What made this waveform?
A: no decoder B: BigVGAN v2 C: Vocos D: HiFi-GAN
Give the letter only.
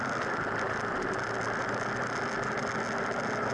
A